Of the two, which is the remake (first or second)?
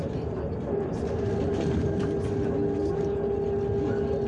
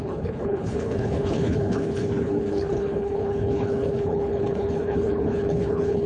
second